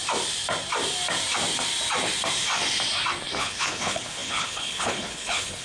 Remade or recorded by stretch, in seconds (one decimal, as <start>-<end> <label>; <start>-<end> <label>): 0.0-3.4 recorded; 3.4-5.6 remade